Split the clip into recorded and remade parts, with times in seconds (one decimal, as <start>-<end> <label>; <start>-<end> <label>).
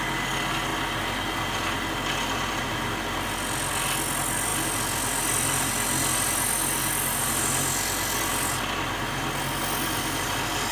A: 0.0-10.7 recorded